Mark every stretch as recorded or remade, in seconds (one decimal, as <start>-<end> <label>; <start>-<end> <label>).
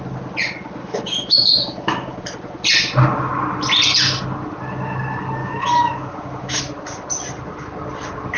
0.0-0.8 recorded; 0.8-2.2 remade; 2.2-5.4 recorded; 5.4-6.6 remade; 6.6-8.4 recorded